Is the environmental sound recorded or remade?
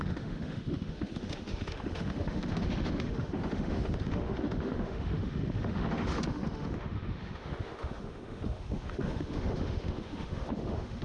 remade